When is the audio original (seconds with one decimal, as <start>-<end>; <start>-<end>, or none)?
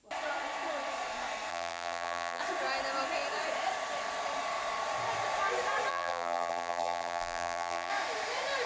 0.0-1.5; 2.4-5.9; 7.9-8.7